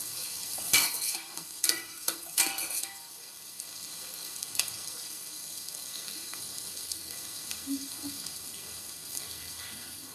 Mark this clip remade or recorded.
remade